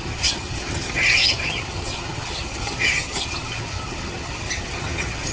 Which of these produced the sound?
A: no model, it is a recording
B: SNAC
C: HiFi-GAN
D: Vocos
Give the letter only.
C